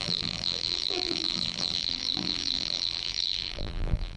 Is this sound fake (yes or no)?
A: yes